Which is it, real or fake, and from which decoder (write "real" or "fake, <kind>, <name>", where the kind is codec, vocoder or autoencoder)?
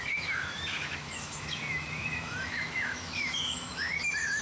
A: fake, autoencoder, DAC-VAE